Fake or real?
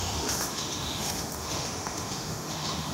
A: fake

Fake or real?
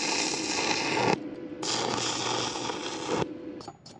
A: real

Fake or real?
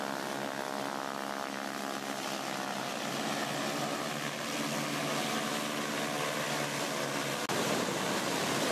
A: real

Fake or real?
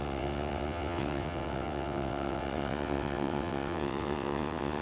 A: fake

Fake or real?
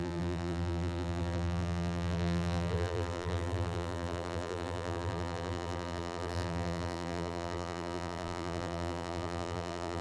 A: fake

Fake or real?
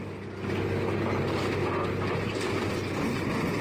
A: real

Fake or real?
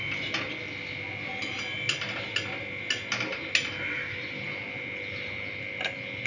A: real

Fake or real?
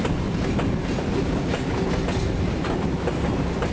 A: real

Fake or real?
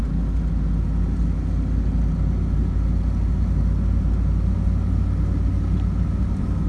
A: real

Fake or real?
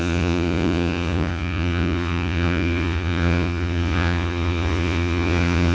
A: fake